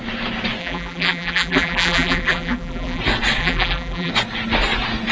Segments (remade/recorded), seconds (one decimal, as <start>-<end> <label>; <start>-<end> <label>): 0.0-0.6 recorded; 0.6-3.0 remade; 3.0-3.4 recorded; 3.4-4.1 remade; 4.1-5.1 recorded